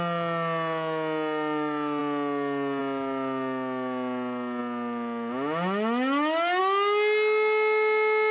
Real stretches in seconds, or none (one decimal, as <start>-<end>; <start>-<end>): 0.0-8.3